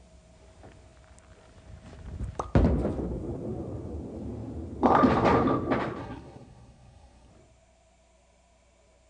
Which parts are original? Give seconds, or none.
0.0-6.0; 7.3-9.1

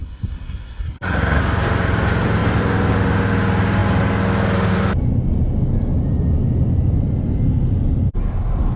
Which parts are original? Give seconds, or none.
1.4-8.8

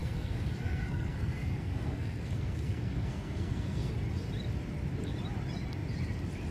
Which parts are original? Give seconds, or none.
3.9-6.5

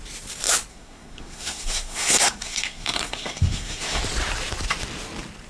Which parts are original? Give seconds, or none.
0.0-0.7; 4.0-5.5

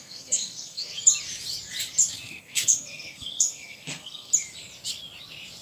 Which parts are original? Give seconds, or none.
0.9-2.4; 4.3-5.6

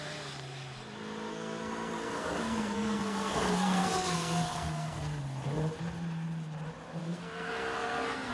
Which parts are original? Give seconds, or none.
0.0-1.3; 5.2-7.0

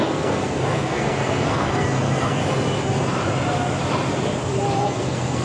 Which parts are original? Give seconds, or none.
2.4-4.8

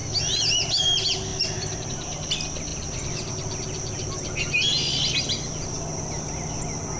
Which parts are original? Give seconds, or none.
0.0-7.0